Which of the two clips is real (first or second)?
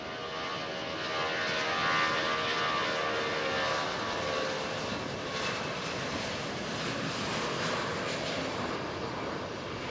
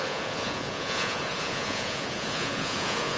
first